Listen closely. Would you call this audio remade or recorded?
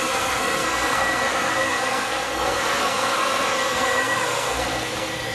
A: remade